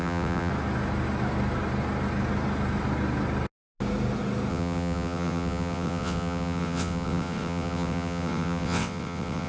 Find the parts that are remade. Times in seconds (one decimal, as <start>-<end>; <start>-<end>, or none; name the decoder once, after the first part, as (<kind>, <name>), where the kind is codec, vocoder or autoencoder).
0.0-0.5 (vocoder, WaveNeXt); 4.5-9.5